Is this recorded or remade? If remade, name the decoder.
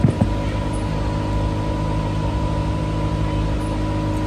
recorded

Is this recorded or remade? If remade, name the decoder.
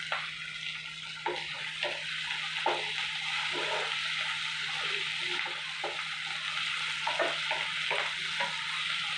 recorded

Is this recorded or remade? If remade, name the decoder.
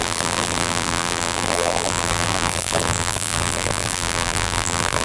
remade, vocoder, BigVGAN v2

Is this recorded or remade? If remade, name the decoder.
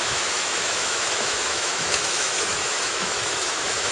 remade, autoencoder, DAC-VAE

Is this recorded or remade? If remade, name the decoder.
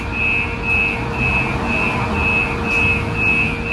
recorded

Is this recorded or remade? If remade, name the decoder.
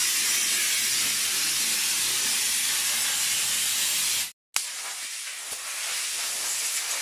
recorded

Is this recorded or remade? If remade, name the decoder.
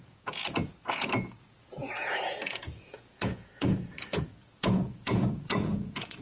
remade, vocoder, Vocos